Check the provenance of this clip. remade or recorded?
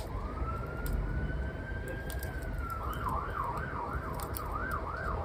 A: recorded